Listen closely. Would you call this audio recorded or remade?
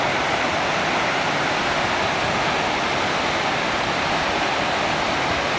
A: recorded